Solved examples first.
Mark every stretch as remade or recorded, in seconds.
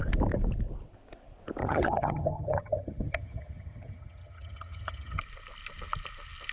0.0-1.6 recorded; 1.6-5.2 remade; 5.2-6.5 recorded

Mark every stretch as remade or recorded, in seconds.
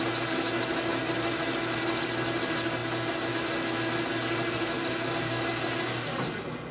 0.0-6.7 recorded